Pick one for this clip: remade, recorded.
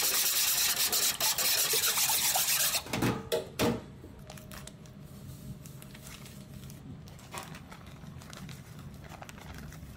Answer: recorded